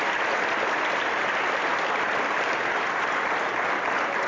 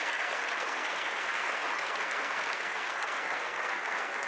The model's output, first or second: second